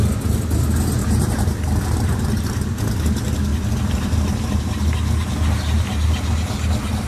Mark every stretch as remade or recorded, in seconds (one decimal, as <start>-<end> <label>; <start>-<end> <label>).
0.0-1.0 recorded; 1.0-2.4 remade; 2.4-3.5 recorded; 3.5-4.6 remade; 4.6-7.1 recorded